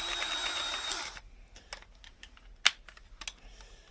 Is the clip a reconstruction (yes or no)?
no